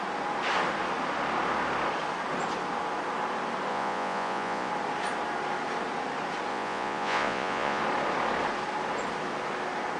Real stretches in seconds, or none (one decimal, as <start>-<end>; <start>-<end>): 0.0-3.7; 4.7-6.5; 7.8-10.0